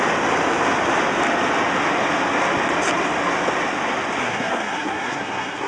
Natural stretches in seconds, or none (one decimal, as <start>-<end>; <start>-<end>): 0.0-4.2